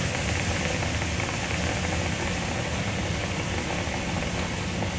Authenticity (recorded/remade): recorded